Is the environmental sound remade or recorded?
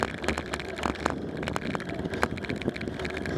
recorded